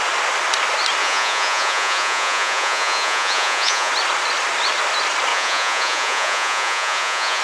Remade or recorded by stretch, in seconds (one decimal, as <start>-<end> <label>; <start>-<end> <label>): 0.0-1.0 recorded; 1.0-3.9 remade; 3.9-5.3 recorded; 5.3-7.4 remade